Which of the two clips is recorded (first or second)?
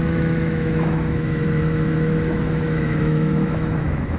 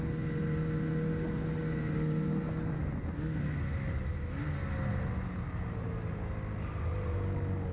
second